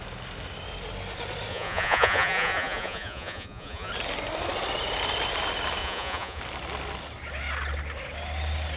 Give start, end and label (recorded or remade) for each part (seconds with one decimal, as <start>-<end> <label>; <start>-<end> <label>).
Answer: 0.0-1.5 recorded; 1.5-3.9 remade; 3.9-5.8 recorded; 5.8-6.4 remade; 6.4-8.8 recorded